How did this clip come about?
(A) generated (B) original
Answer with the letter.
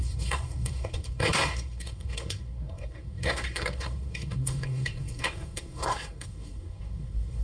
A